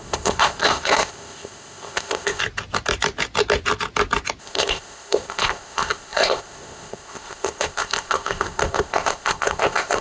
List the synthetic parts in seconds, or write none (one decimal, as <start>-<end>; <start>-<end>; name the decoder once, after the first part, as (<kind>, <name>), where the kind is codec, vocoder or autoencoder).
0.0-2.4 (codec, ZipCodec); 4.4-10.0